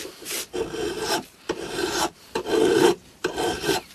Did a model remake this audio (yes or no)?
yes